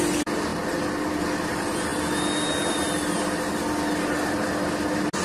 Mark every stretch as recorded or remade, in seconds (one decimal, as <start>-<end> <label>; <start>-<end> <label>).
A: 0.0-5.2 recorded